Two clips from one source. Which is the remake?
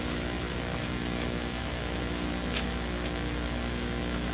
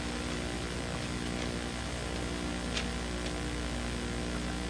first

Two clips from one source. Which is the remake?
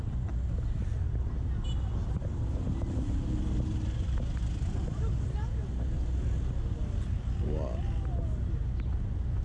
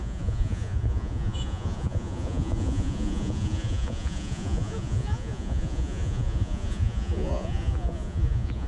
second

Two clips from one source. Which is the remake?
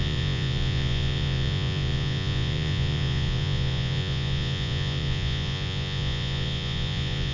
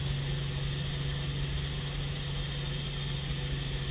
first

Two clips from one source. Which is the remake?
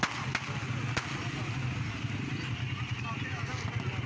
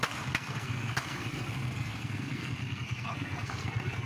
second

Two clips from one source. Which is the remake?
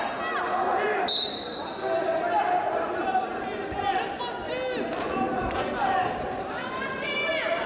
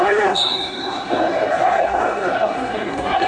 second